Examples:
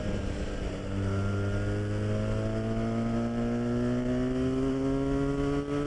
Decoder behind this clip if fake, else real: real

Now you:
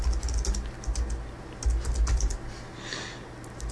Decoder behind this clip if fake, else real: real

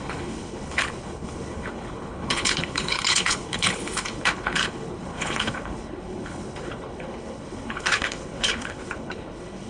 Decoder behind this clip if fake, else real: fake, codec, HILCodec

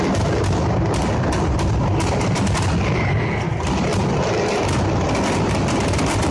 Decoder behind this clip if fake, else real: real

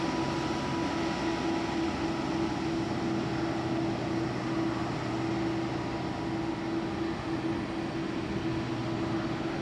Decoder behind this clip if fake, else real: real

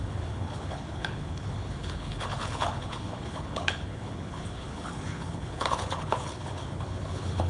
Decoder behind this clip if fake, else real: fake, codec, HILCodec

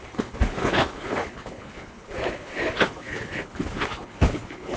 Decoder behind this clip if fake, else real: fake, codec, HILCodec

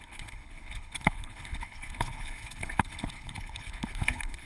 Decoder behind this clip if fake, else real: fake, codec, HILCodec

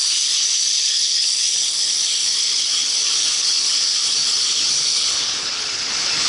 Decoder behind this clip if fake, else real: fake, codec, HILCodec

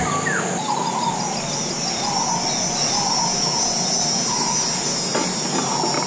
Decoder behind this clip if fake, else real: real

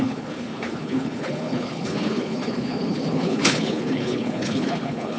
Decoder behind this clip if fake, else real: fake, codec, HILCodec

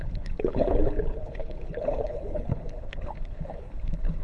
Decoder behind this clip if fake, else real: fake, codec, HILCodec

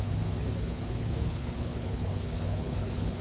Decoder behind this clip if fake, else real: fake, codec, HILCodec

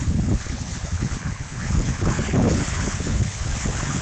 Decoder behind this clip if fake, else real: fake, codec, HILCodec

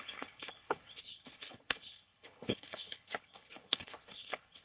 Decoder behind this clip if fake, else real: fake, codec, HILCodec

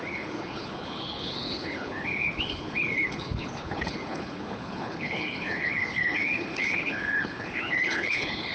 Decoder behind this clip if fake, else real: fake, codec, HILCodec